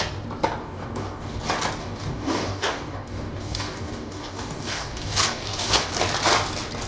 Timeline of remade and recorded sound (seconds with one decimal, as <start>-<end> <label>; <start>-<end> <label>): 0.0-0.6 recorded; 0.6-1.4 remade; 1.4-1.8 recorded; 1.8-5.9 remade; 5.9-6.9 recorded